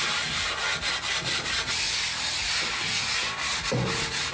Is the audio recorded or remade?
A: recorded